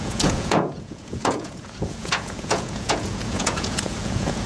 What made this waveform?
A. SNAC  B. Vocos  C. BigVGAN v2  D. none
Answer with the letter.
B